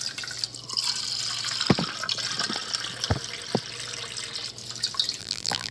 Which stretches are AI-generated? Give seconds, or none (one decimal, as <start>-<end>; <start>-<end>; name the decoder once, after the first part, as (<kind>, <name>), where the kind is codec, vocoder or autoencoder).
5.2-5.7 (vocoder, BigVGAN v2)